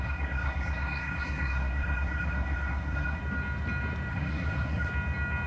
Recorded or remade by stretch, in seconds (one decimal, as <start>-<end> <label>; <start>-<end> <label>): 0.0-3.2 remade; 3.2-4.1 recorded; 4.1-4.9 remade; 4.9-5.5 recorded